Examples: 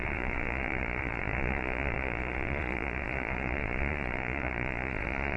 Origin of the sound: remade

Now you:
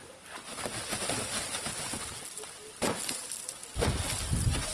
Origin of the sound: recorded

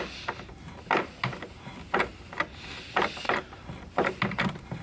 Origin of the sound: recorded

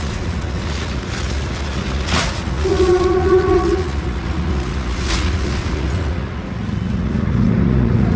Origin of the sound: remade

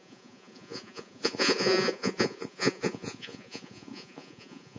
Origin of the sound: remade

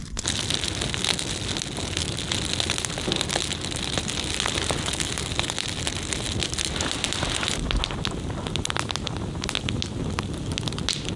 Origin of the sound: recorded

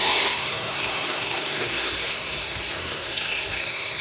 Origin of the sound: remade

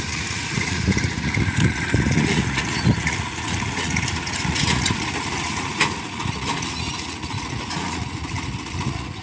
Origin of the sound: remade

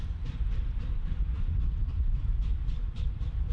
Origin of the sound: remade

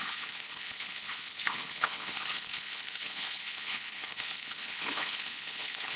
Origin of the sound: remade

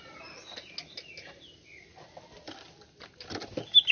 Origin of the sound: recorded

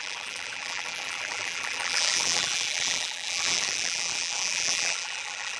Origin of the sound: remade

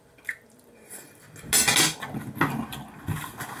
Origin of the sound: recorded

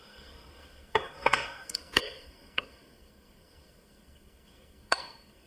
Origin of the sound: remade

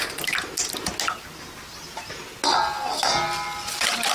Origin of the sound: recorded